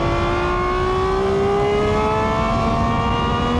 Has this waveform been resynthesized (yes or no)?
no